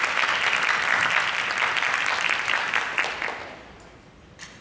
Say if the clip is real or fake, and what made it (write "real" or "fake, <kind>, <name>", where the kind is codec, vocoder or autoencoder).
real